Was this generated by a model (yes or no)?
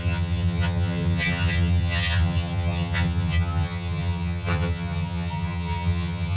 yes